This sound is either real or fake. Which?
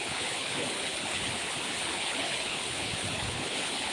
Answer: fake